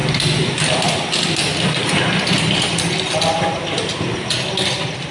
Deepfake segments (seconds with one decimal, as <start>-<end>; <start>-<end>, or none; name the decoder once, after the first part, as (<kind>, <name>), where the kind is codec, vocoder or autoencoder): 2.9-5.1 (vocoder, BigVGAN v2)